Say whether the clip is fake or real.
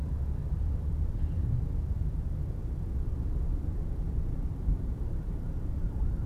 fake